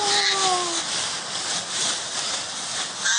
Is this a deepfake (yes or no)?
no